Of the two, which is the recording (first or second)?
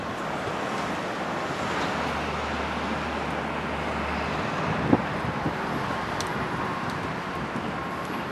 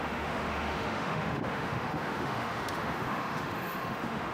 first